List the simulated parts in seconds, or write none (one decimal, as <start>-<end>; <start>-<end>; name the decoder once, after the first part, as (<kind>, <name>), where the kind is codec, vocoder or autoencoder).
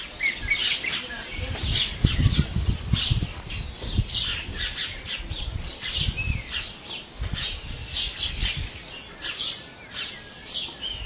4.3-7.6 (vocoder, BigVGAN v2)